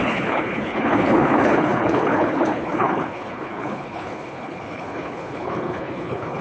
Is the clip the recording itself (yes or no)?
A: no